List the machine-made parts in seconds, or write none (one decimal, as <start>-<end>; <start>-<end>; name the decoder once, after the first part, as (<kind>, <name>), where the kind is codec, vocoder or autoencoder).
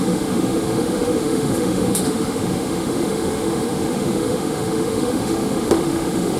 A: 0.0-6.4 (autoencoder, DAC-VAE)